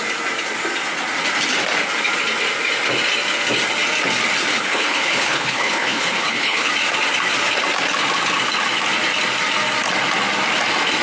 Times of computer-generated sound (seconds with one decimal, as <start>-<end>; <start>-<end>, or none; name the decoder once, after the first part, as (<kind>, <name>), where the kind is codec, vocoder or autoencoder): 4.5-6.7 (codec, HILCodec)